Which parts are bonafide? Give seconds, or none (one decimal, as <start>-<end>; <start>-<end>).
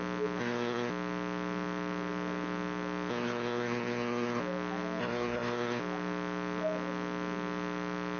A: 0.0-0.4; 0.9-3.1; 4.4-5.0; 5.8-8.2